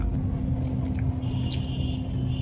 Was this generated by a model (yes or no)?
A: no